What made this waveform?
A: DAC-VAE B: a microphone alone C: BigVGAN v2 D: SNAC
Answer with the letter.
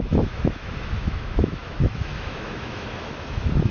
A